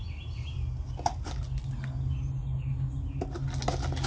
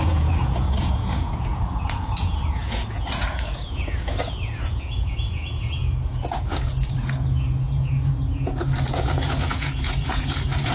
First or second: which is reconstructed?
second